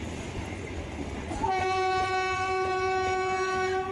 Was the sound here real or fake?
fake